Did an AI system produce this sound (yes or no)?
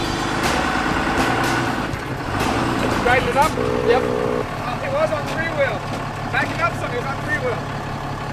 no